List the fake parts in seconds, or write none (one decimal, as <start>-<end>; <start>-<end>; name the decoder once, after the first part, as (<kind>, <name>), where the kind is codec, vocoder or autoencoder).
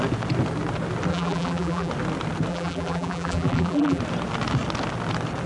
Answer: 1.1-1.9 (vocoder, BigVGAN v2); 2.5-4.0